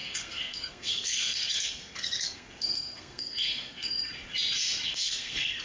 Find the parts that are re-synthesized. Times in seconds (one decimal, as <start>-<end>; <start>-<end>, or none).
0.0-4.1; 4.9-5.6